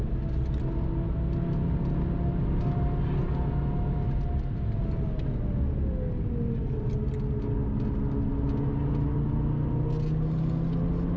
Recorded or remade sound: recorded